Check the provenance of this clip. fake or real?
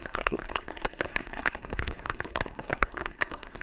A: fake